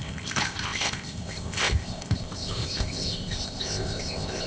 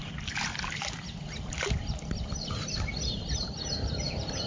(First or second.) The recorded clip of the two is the second